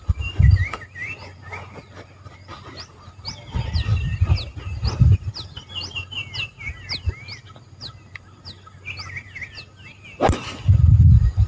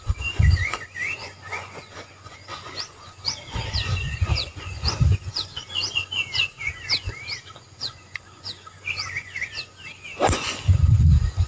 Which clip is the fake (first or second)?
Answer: second